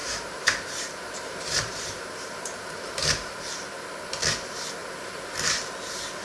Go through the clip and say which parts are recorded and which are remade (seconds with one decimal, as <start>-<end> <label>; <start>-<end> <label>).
0.0-3.5 remade; 3.5-4.8 recorded; 4.8-5.6 remade; 5.6-6.2 recorded